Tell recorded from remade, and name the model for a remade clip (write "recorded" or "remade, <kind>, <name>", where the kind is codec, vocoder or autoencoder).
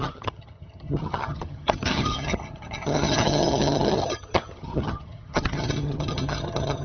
remade, vocoder, HiFi-GAN